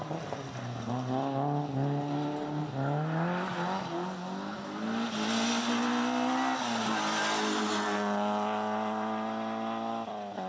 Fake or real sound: real